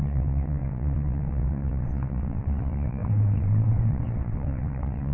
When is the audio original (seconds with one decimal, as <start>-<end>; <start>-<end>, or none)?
none